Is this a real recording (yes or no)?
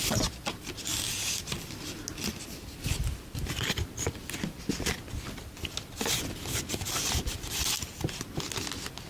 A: yes